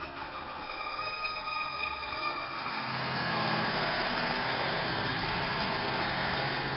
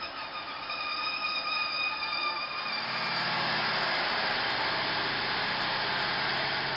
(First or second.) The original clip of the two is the second